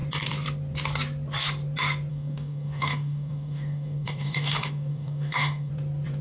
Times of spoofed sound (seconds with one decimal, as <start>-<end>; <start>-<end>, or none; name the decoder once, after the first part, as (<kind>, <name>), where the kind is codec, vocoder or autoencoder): 2.1-5.7 (codec, DAC)